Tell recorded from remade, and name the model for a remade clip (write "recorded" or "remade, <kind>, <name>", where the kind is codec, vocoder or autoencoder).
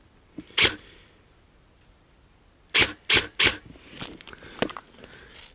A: recorded